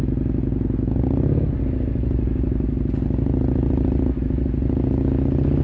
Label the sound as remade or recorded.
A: recorded